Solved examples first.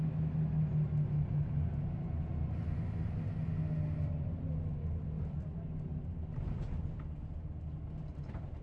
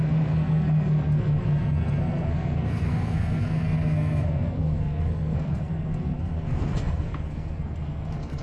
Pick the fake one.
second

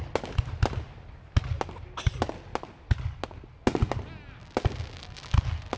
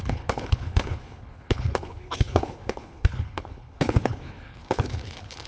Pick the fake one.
second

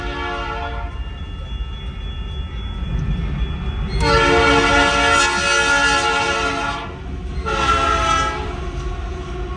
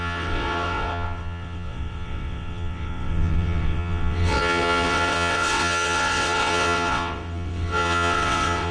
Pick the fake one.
second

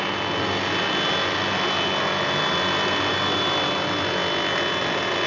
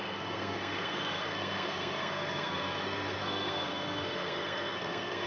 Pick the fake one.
second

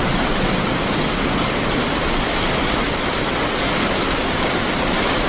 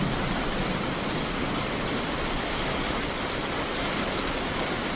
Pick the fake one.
second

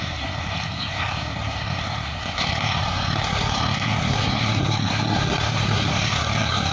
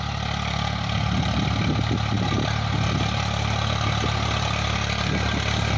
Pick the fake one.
first